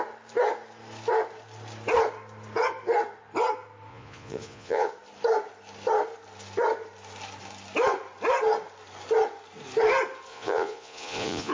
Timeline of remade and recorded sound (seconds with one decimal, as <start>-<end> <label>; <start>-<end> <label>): 0.0-3.9 recorded; 3.9-4.9 remade; 4.9-10.3 recorded; 10.3-11.5 remade